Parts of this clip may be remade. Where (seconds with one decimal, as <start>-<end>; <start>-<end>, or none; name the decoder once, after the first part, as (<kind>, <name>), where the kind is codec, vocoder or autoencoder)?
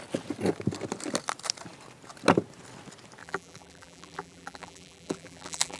3.2-5.8 (vocoder, BigVGAN v2)